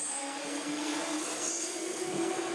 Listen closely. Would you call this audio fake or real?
fake